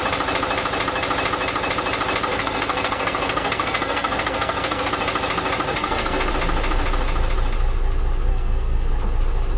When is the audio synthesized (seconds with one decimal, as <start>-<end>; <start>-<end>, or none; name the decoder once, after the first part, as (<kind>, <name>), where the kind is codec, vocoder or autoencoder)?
2.3-4.9 (codec, SNAC); 5.7-6.3; 8.3-8.9